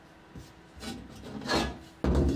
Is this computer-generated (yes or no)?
no